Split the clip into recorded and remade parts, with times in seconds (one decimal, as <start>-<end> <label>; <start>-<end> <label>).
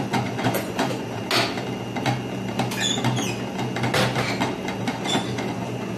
0.0-1.2 remade; 1.2-4.8 recorded; 4.8-6.0 remade